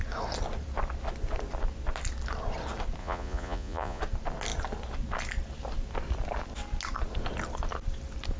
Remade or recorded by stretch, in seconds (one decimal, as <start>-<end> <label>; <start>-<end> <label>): 0.0-3.0 recorded; 3.0-4.0 remade; 4.0-8.4 recorded